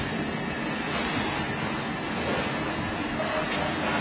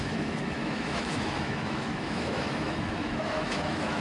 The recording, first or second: first